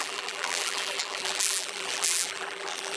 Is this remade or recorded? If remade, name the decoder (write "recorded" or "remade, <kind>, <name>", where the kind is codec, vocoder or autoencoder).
remade, vocoder, BigVGAN v2